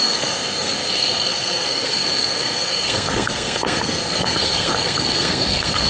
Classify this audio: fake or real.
fake